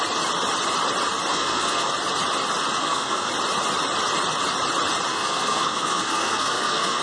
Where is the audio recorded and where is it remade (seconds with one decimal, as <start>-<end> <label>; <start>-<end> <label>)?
0.0-1.3 recorded; 1.3-1.9 remade; 1.9-2.8 recorded; 2.8-3.3 remade; 3.3-5.1 recorded; 5.1-7.0 remade